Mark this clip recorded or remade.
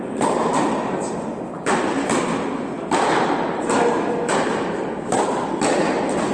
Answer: recorded